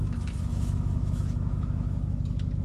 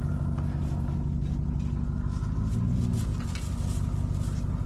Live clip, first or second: second